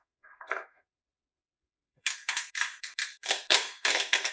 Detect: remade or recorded remade